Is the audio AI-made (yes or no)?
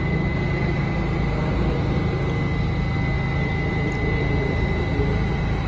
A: no